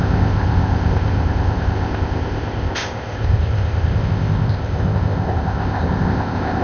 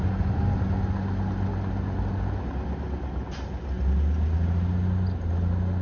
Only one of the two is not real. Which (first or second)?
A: first